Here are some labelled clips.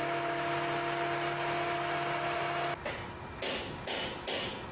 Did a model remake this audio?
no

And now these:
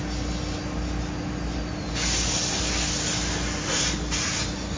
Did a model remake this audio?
no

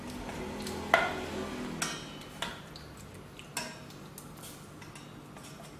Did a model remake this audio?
no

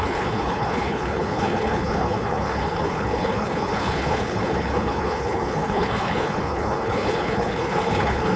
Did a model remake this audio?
yes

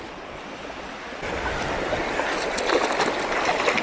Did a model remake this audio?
no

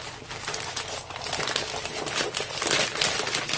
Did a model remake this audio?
no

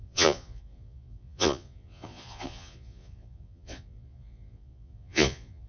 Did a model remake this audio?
yes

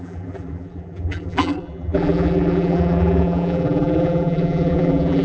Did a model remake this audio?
yes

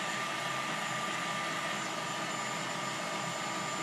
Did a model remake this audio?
no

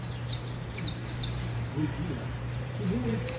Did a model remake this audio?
yes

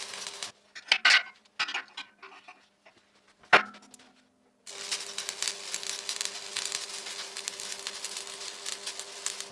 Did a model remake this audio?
no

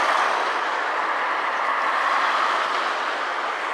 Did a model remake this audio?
no